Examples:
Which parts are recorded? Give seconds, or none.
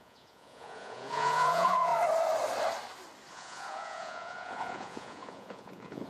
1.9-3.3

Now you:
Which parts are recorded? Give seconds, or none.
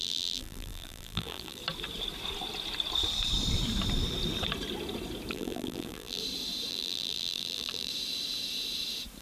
1.6-5.3; 6.2-6.7; 7.9-9.2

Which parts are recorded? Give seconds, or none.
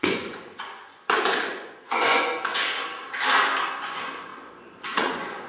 2.5-3.7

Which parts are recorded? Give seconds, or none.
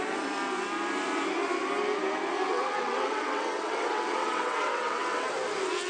0.0-2.4; 5.3-5.9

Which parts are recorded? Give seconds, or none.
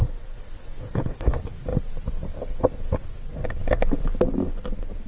0.0-5.1